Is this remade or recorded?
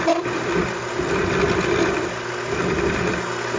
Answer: recorded